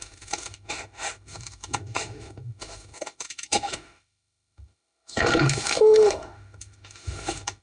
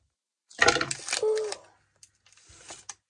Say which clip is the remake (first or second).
first